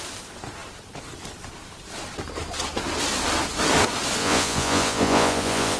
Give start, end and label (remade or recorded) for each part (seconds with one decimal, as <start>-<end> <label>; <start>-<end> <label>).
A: 0.0-4.2 recorded; 4.2-5.8 remade